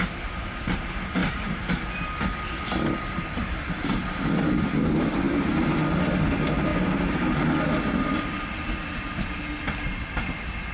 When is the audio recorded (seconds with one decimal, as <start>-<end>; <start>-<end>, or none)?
0.0-10.7